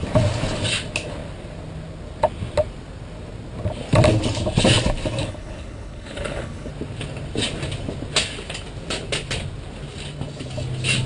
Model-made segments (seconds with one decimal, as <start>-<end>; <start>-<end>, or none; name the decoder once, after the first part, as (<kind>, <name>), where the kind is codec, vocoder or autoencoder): 5.2-6.7 (codec, HILCodec)